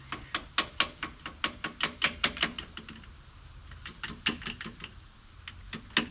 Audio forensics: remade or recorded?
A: recorded